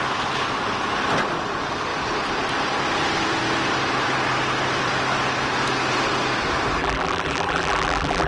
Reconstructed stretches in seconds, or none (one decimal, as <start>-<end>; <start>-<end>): 6.8-8.3